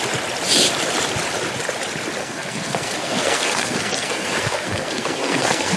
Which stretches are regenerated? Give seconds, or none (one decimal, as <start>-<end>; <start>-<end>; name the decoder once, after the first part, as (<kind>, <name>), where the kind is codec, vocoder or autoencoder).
2.2-5.8 (codec, SNAC)